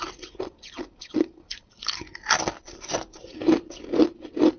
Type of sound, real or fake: real